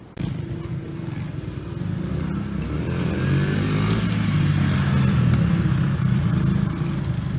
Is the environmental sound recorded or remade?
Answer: recorded